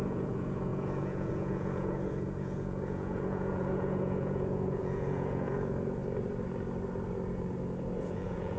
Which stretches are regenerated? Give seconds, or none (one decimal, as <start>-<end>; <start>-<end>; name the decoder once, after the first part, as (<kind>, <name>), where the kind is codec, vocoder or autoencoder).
0.0-6.0 (vocoder, Vocos); 8.0-8.6